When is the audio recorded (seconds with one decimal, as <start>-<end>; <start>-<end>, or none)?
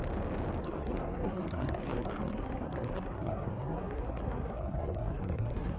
0.0-0.6